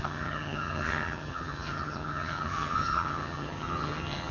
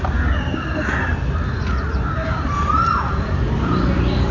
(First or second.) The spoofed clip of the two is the first